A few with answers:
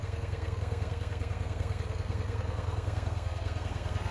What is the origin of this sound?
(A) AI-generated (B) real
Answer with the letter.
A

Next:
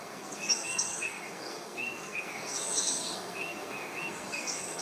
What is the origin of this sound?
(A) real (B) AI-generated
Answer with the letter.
B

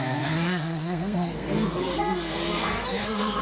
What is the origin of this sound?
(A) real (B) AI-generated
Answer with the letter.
B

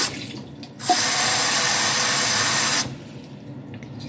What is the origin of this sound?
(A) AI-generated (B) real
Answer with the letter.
B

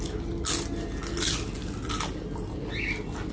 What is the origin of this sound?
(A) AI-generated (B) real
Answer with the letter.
B